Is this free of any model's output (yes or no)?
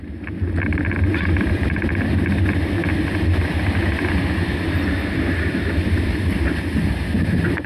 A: yes